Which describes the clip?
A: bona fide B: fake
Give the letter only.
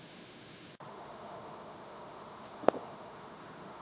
B